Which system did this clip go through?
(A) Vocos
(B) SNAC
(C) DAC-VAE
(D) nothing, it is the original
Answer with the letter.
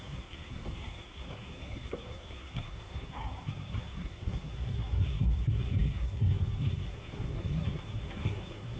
B